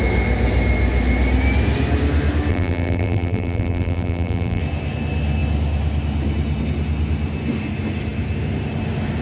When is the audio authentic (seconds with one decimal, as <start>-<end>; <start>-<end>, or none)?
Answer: 0.0-2.5; 4.6-9.2